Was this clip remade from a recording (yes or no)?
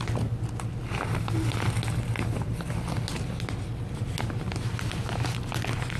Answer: no